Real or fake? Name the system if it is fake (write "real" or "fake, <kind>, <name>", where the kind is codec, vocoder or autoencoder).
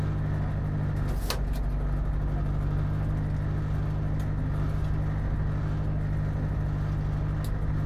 real